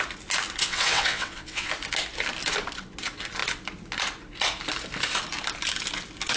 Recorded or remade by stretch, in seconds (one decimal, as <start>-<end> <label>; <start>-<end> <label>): 0.0-0.6 recorded; 0.6-1.7 remade; 1.7-6.4 recorded